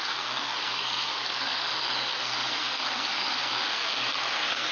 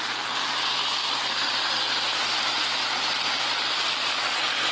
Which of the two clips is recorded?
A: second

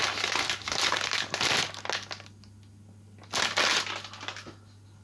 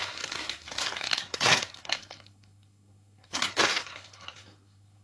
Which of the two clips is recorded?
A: first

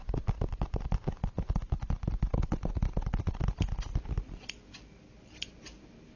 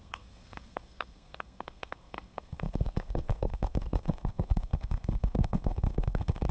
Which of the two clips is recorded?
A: first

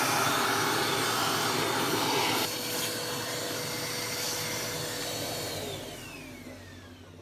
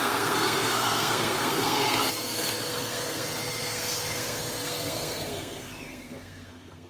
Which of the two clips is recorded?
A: first